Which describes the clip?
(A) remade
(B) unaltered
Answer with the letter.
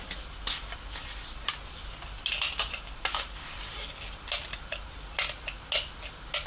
B